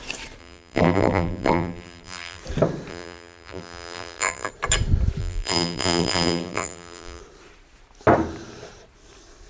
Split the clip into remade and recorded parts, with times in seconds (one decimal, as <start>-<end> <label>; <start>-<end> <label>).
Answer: 0.0-0.4 recorded; 0.4-2.4 remade; 2.4-2.9 recorded; 2.9-4.5 remade; 4.5-5.2 recorded; 5.2-7.2 remade; 7.2-9.5 recorded